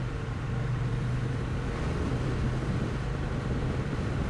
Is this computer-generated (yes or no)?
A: yes